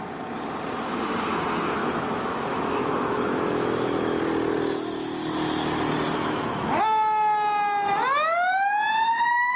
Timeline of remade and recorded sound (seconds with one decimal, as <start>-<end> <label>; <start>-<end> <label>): 0.0-1.8 recorded; 1.8-4.2 remade; 4.2-6.2 recorded; 6.2-6.8 remade; 6.8-9.6 recorded